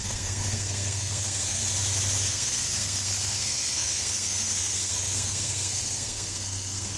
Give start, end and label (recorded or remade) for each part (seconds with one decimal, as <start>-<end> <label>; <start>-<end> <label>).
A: 0.0-1.6 remade; 1.6-2.3 recorded; 2.3-7.0 remade